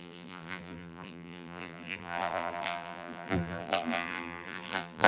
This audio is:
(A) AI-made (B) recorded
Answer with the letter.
A